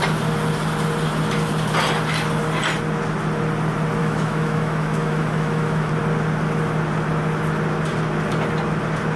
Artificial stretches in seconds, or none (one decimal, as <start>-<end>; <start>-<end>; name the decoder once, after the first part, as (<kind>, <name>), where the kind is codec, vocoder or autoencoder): 4.0-5.9 (autoencoder, DAC-VAE)